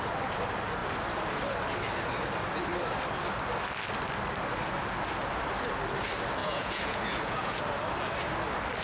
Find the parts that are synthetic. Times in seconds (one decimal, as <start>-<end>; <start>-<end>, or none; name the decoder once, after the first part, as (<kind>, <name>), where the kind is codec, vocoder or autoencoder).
6.4-7.6 (vocoder, Vocos)